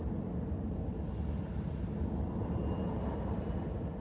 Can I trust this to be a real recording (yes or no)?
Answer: yes